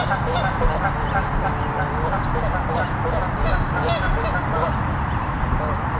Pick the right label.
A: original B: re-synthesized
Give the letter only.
A